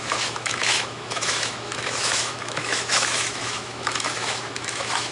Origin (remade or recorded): remade